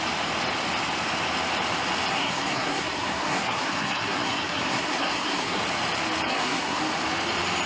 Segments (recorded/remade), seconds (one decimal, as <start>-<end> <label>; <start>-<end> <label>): 0.0-2.1 recorded; 2.1-5.6 remade; 5.6-6.3 recorded; 6.3-6.8 remade; 6.8-7.7 recorded